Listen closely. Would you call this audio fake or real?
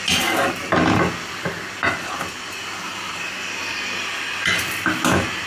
real